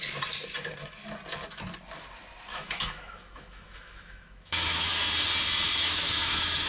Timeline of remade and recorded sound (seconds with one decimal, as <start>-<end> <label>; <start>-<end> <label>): 0.0-2.5 recorded; 2.5-4.9 remade; 4.9-5.7 recorded; 5.7-6.7 remade